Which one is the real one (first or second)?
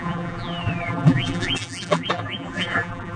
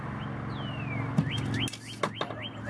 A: second